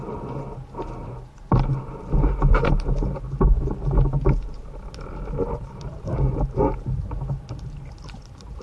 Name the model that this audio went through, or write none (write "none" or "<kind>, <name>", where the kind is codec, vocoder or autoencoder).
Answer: none